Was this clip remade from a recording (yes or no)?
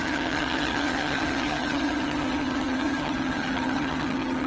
yes